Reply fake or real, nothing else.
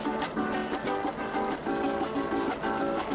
real